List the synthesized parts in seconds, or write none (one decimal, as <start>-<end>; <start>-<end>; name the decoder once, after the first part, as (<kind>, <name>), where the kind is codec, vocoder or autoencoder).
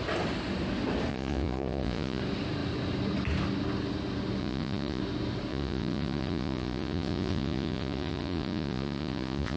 1.1-2.2 (vocoder, Vocos); 4.4-5.0; 5.5-9.6